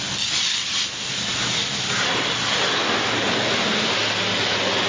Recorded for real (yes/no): yes